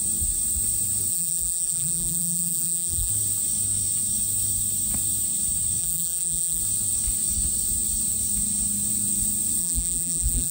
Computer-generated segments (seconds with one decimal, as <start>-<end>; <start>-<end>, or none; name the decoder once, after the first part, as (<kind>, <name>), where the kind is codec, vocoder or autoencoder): 1.1-3.1 (vocoder, BigVGAN v2); 5.8-6.6; 9.6-10.5